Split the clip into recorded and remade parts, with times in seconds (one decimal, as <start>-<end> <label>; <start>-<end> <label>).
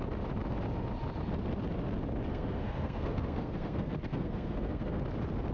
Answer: 0.0-2.3 recorded; 2.3-5.0 remade; 5.0-5.5 recorded